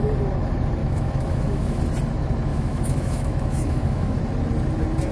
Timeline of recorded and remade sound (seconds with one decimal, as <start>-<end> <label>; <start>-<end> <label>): 0.0-0.8 recorded; 0.8-1.8 remade; 1.8-2.5 recorded; 2.5-4.2 remade; 4.2-5.1 recorded